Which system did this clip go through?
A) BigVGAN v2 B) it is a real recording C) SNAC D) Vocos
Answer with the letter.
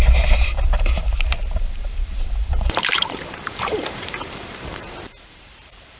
A